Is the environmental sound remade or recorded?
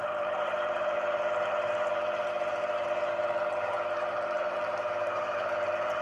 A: remade